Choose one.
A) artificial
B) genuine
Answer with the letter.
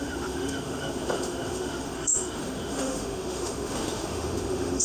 A